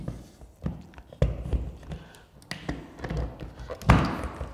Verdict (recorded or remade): recorded